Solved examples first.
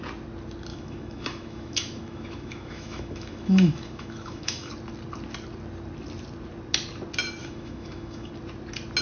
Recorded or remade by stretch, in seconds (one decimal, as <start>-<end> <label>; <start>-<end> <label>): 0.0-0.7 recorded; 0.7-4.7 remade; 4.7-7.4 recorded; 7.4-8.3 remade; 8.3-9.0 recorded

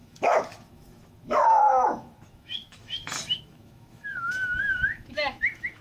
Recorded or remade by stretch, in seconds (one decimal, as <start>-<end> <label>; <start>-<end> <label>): 0.0-5.8 remade

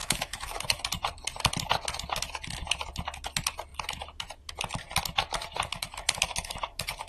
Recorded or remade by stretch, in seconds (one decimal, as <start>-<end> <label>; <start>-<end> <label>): 0.0-0.8 remade; 0.8-5.7 recorded; 5.7-7.1 remade